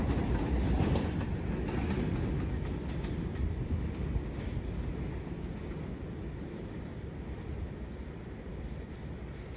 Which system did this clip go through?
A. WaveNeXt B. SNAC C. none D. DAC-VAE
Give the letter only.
C